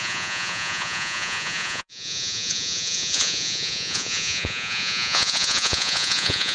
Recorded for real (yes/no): no